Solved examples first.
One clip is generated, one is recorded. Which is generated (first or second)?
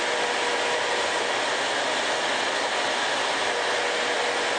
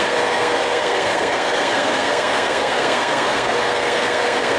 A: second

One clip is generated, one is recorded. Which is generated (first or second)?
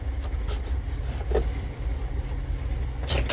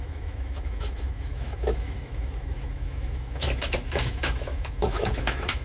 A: second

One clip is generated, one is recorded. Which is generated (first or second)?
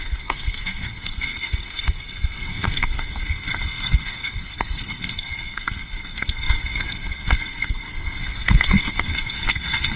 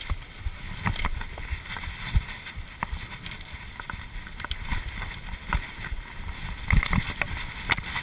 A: first